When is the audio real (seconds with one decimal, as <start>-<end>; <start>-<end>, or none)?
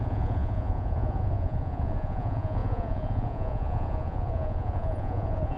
none